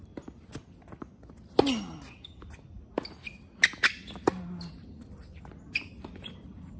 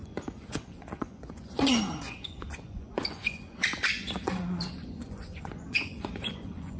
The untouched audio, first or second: first